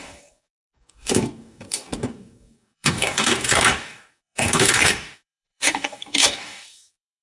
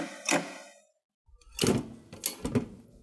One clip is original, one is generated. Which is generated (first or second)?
first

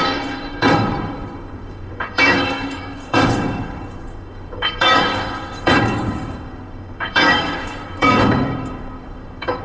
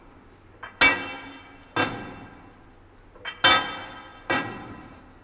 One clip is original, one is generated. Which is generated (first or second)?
first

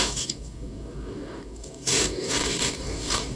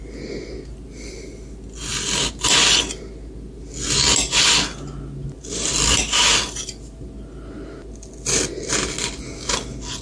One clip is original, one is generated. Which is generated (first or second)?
first